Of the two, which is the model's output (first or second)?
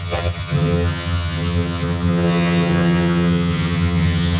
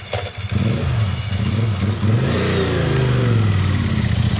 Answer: first